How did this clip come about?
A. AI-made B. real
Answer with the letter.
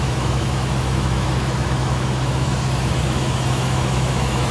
A